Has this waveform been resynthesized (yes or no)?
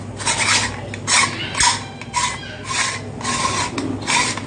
no